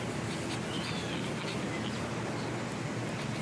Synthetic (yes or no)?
no